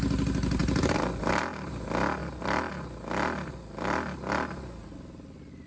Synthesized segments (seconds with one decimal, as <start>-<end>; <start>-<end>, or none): 0.6-1.2; 2.2-2.7